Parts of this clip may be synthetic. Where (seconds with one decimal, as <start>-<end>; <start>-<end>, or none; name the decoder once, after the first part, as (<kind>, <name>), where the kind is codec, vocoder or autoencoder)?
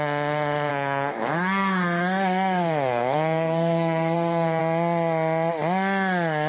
0.7-4.6 (codec, SNAC)